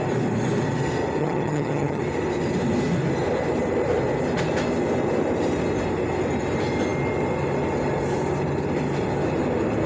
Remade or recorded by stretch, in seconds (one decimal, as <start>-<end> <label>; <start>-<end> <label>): 0.0-1.2 recorded; 1.2-2.0 remade; 2.0-9.9 recorded